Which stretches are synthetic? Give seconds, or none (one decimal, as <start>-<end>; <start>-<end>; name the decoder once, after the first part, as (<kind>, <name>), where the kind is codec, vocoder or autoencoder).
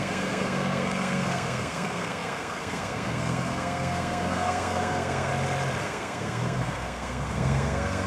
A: 0.0-5.3 (codec, SNAC); 5.8-8.1